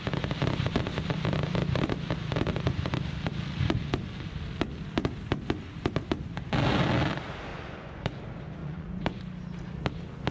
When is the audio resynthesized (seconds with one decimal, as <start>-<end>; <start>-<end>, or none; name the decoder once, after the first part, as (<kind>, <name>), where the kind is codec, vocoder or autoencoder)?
7.5-8.2 (vocoder, Vocos); 8.6-9.2